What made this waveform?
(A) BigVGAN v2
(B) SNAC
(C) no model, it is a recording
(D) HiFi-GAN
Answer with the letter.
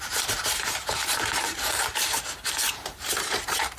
A